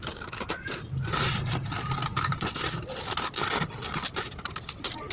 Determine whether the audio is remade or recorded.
recorded